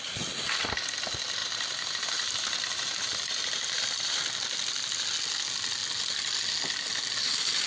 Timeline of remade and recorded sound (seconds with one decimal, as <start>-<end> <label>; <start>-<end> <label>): 0.0-1.4 recorded; 1.4-4.2 remade; 4.2-7.7 recorded